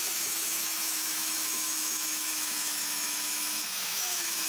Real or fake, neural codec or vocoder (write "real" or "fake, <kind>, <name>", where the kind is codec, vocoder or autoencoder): fake, autoencoder, DAC-VAE